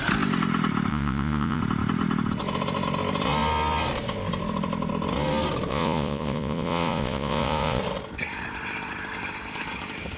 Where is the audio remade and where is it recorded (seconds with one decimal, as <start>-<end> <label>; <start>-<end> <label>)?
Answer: 0.0-0.9 recorded; 0.9-1.6 remade; 1.6-5.7 recorded; 5.7-7.8 remade; 7.8-10.2 recorded